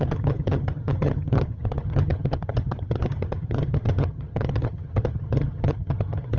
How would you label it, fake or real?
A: fake